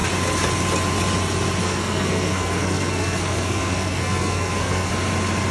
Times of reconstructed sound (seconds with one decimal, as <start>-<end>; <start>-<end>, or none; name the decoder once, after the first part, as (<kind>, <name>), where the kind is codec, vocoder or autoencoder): 1.6-4.9 (codec, SNAC)